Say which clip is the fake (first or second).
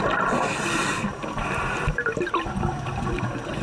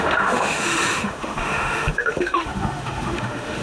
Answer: second